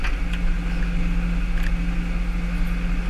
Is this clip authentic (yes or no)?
yes